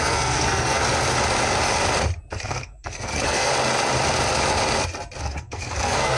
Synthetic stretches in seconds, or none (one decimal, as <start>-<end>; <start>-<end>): 0.0-0.8; 2.3-3.5; 5.2-6.2